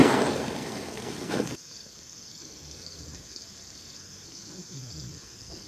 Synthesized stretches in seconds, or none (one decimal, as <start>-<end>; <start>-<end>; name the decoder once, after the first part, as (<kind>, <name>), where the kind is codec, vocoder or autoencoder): 0.0-5.7 (codec, SNAC)